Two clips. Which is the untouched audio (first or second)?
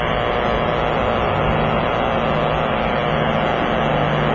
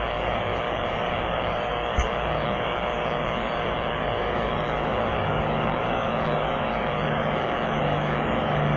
first